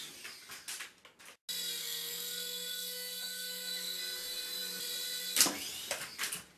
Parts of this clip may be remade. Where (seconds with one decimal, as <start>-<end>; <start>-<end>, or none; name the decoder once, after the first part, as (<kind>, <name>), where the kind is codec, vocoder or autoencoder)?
1.8-4.0 (codec, SNAC)